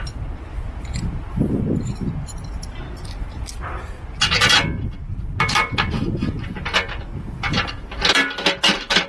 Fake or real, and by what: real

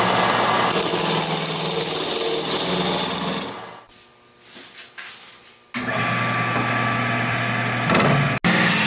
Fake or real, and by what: real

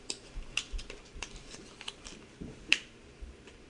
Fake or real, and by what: fake, vocoder, BigVGAN v2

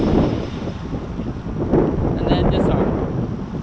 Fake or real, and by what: real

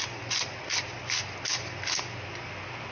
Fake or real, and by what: real